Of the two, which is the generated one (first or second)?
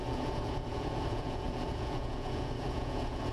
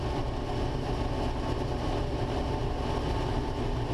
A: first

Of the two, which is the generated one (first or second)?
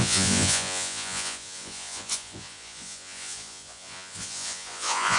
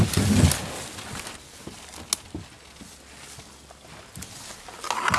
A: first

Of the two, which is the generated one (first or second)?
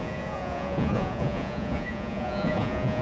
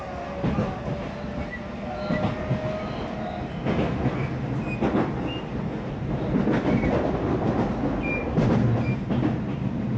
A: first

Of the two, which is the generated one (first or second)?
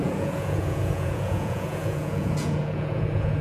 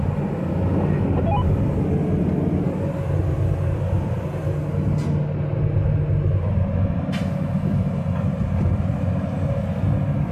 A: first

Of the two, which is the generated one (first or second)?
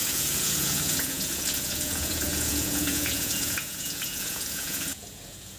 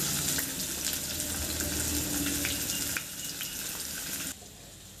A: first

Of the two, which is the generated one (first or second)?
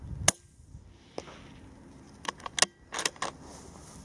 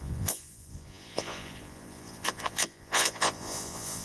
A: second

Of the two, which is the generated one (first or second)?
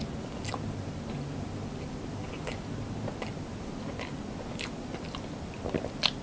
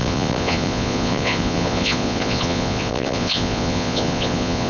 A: second